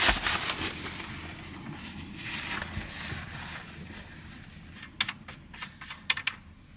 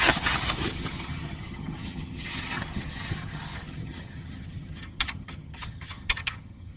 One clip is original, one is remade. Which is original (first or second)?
first